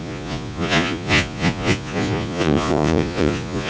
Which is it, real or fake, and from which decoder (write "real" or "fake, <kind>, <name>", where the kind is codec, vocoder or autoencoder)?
fake, vocoder, Vocos